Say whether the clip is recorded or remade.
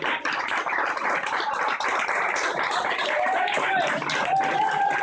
recorded